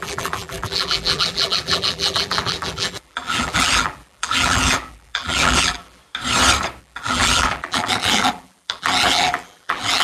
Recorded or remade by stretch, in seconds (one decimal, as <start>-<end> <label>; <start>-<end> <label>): 0.0-6.0 remade; 6.0-6.8 recorded; 6.8-10.0 remade

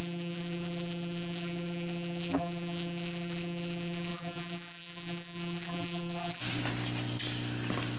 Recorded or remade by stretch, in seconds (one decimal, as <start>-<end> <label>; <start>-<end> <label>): 0.0-6.4 remade; 6.4-8.0 recorded

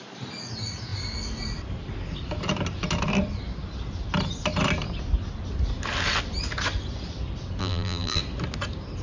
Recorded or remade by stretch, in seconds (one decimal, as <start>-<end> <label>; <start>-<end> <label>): 0.0-7.6 recorded; 7.6-8.2 remade; 8.2-9.0 recorded

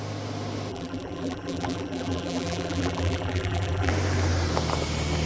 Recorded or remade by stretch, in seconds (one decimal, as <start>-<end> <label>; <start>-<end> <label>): 0.0-0.7 recorded; 0.7-3.9 remade; 3.9-5.3 recorded

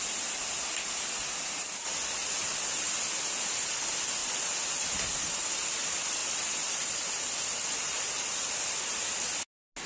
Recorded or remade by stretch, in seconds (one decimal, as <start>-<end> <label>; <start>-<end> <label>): 0.0-2.4 recorded; 2.4-3.0 remade; 3.0-6.2 recorded; 6.2-7.3 remade; 7.3-9.9 recorded

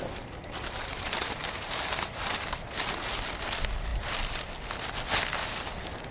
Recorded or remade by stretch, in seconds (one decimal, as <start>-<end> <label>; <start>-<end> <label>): 0.0-0.4 recorded; 0.4-3.3 remade; 3.3-6.1 recorded